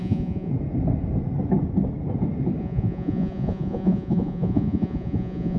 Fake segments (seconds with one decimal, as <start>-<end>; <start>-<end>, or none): 0.0-0.5; 2.6-5.6